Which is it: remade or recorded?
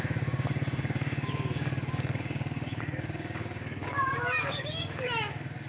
remade